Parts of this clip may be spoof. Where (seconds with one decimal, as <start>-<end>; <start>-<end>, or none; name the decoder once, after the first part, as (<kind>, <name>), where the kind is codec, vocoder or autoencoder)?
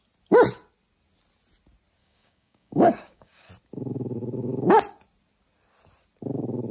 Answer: 2.0-3.5 (codec, DAC)